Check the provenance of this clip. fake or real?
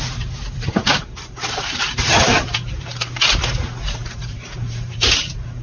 fake